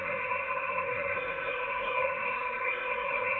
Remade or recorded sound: remade